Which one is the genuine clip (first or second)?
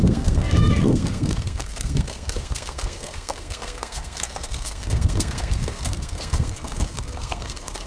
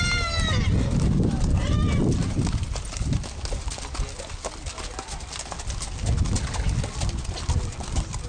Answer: second